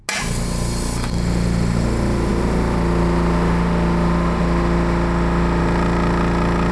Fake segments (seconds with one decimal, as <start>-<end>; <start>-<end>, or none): none